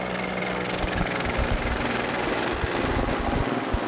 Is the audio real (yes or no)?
yes